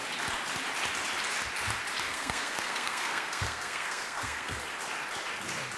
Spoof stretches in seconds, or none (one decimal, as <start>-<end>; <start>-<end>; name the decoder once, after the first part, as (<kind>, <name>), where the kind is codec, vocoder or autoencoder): 2.1-4.6 (codec, SNAC)